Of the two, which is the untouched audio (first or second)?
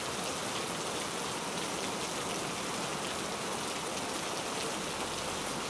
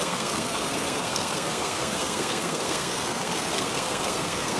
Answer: first